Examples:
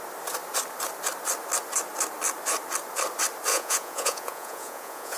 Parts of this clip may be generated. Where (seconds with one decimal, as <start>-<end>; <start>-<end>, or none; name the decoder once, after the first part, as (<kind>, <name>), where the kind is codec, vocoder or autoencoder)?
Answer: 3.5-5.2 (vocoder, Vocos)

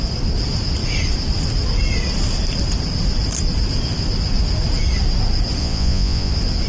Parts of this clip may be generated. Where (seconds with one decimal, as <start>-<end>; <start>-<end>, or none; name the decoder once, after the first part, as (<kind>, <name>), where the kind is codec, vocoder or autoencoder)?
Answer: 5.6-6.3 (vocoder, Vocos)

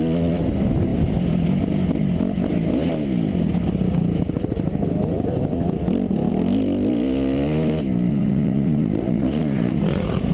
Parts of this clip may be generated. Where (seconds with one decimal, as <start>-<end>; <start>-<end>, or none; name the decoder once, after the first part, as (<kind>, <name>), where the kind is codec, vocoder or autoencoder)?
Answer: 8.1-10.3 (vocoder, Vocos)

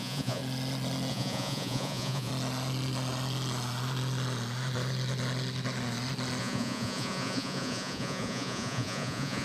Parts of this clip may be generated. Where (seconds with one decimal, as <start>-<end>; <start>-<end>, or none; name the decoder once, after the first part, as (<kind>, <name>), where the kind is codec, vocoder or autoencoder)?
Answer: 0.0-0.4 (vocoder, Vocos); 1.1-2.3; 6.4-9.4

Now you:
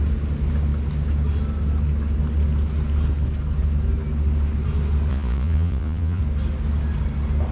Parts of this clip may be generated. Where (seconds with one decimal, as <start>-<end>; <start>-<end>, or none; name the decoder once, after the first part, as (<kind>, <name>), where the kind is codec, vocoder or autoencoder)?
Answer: 5.1-6.2 (vocoder, Vocos)

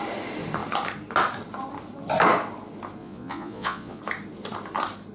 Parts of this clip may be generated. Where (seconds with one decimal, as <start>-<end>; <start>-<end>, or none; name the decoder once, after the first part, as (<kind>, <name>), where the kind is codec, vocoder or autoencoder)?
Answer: 3.0-4.0 (vocoder, Vocos)

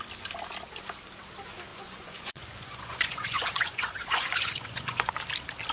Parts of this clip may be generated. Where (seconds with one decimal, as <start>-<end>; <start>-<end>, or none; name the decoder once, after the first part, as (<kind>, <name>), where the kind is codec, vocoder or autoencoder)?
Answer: 1.7-5.1 (vocoder, Vocos)